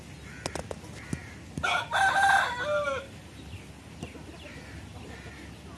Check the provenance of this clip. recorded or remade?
recorded